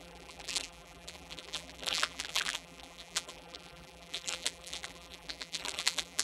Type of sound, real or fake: fake